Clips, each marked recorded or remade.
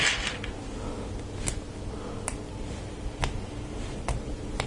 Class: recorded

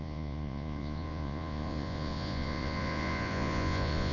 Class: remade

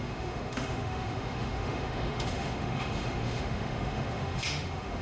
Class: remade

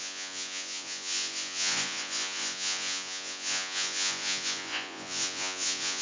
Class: remade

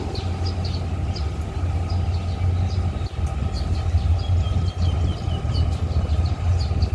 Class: recorded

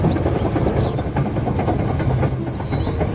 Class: recorded